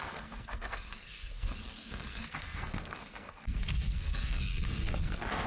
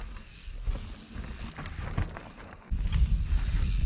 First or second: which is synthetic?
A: first